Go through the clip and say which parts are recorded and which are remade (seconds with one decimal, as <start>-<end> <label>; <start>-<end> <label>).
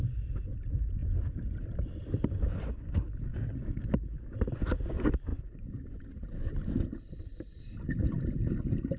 0.0-1.0 remade; 1.0-1.6 recorded; 1.6-3.3 remade; 3.3-4.5 recorded; 4.5-9.0 remade